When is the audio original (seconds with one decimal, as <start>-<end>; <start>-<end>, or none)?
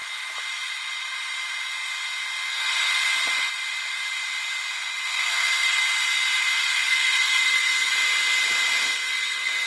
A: 0.0-2.5; 2.9-4.7; 5.8-6.4; 7.9-8.8